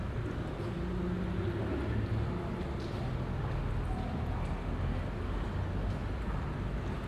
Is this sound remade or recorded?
recorded